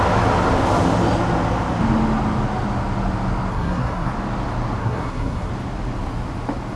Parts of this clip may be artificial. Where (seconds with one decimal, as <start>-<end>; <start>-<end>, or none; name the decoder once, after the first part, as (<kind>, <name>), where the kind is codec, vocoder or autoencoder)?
3.5-4.1 (codec, SNAC); 4.8-5.5